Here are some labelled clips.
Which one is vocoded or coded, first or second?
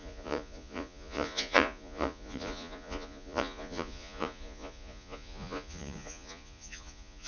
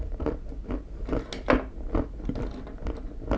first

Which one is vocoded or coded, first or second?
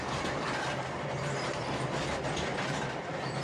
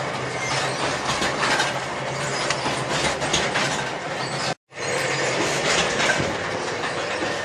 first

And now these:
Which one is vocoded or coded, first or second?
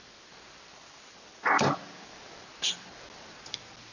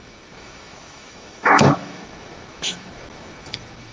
second